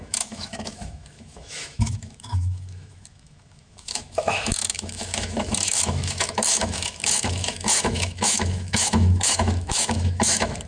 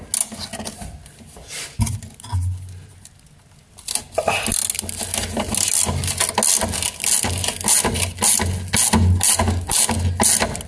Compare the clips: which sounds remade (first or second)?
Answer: first